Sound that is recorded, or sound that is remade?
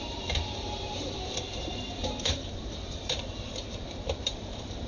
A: remade